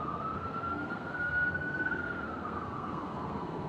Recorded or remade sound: remade